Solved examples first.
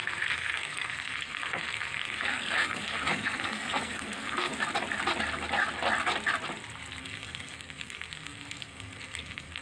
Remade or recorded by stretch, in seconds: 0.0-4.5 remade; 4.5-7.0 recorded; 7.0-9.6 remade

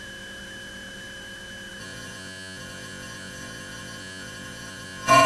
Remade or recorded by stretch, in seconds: 0.0-1.8 recorded; 1.8-5.3 remade

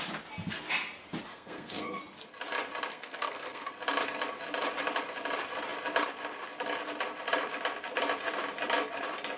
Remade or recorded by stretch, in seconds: 0.0-1.3 recorded; 1.3-2.0 remade; 2.0-2.9 recorded; 2.9-3.7 remade; 3.7-9.4 recorded